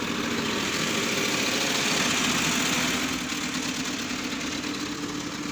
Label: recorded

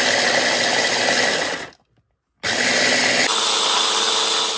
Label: recorded